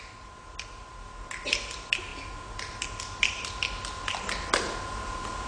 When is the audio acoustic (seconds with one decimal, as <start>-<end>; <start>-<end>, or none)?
0.0-5.5